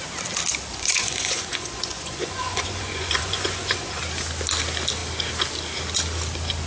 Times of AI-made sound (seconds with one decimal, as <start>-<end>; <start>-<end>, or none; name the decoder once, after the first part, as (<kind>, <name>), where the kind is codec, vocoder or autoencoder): 0.7-4.0 (vocoder, Vocos)